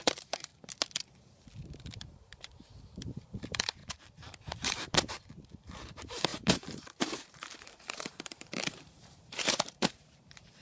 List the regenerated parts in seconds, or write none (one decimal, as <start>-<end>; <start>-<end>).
0.0-0.5; 2.1-10.6